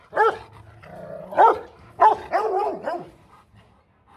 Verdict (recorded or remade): recorded